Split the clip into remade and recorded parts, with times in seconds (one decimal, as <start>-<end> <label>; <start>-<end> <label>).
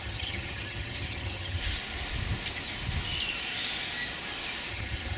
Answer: 0.0-1.6 remade; 1.6-4.7 recorded; 4.7-5.2 remade